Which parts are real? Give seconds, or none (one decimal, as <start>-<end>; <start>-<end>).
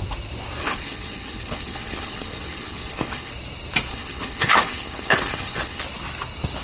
0.0-0.6; 3.3-3.9; 5.8-6.6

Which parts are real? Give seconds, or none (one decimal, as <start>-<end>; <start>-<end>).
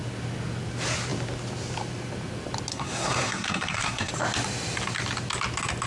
0.0-2.7; 4.1-5.9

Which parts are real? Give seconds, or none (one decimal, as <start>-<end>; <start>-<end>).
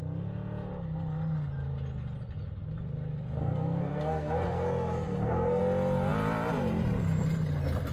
0.0-3.4; 5.6-7.9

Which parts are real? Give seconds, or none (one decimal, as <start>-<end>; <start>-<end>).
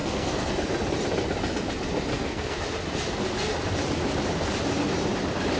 0.5-2.1; 2.6-5.6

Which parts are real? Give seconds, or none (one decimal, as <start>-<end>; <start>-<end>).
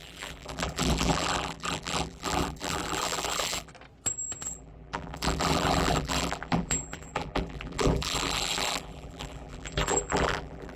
3.7-4.4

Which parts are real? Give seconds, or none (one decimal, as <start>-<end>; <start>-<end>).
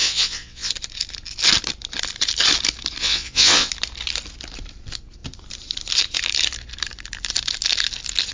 0.7-3.0; 3.7-8.3